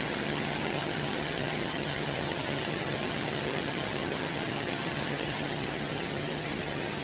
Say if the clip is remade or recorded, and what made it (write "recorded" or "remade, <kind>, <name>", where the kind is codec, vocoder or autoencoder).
remade, vocoder, HiFi-GAN